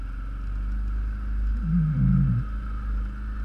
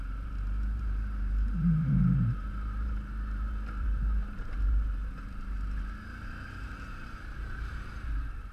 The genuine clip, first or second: first